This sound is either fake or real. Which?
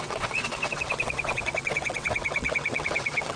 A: fake